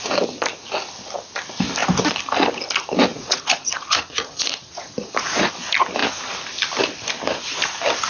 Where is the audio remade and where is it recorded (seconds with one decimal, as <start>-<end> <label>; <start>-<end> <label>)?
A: 0.0-3.1 recorded; 3.1-5.5 remade; 5.5-8.1 recorded